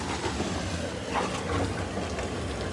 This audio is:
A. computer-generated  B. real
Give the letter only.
B